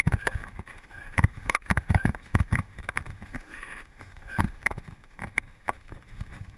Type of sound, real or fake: fake